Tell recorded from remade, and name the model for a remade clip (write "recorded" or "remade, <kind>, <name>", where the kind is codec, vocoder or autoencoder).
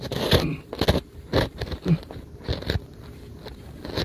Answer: recorded